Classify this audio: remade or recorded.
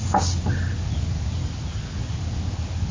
recorded